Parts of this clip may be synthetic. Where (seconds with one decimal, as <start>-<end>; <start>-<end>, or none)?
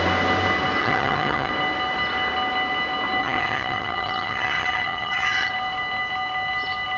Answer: 0.8-1.5; 3.2-5.5